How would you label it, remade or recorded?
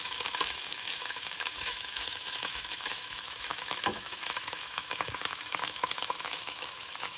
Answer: remade